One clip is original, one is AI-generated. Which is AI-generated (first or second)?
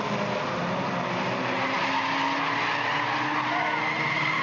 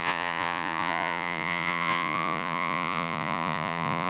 second